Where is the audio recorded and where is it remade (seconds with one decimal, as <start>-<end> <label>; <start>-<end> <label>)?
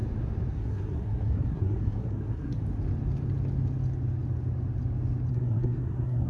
0.0-0.5 recorded; 0.5-2.6 remade; 2.6-5.3 recorded; 5.3-6.3 remade